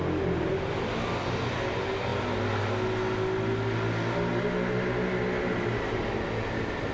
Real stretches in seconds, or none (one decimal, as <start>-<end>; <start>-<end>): 0.0-6.9